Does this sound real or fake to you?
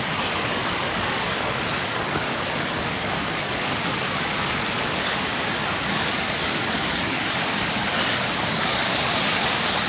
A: fake